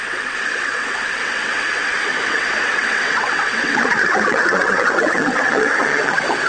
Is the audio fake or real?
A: fake